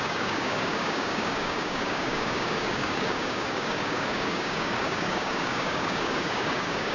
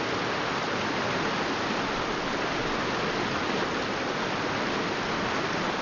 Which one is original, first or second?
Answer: second